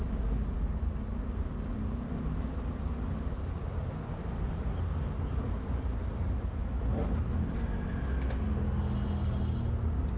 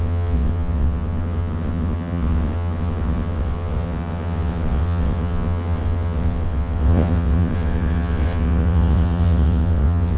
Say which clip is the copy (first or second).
second